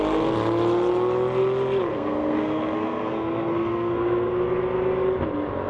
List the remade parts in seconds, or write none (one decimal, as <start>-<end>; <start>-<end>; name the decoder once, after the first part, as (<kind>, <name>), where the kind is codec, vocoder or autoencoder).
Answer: 1.9-4.3 (codec, SNAC)